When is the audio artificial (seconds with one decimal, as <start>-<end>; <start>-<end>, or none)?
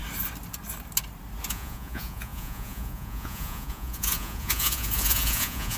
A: 1.5-5.8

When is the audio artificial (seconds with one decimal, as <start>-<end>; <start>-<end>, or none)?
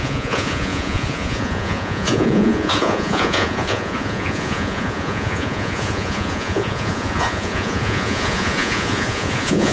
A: 0.0-9.7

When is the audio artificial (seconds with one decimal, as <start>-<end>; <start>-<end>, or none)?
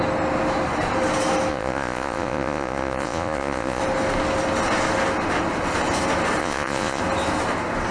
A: 1.5-3.8; 6.4-7.0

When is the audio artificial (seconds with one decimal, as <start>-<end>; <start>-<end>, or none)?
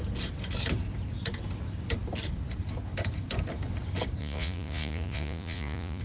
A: 4.2-6.0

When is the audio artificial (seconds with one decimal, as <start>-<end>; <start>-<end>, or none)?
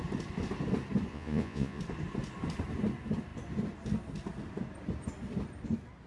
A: 1.1-1.8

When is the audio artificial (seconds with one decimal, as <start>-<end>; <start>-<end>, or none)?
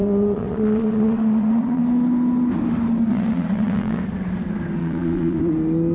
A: 0.0-1.8; 3.1-4.0; 4.8-5.4